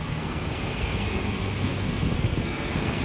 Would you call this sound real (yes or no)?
no